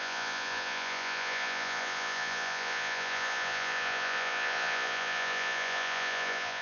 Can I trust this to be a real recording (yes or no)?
no